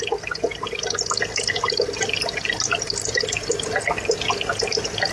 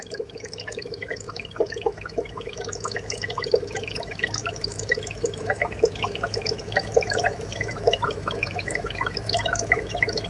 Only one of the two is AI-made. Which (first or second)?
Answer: second